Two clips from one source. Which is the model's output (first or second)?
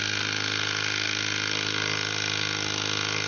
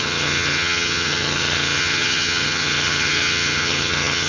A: second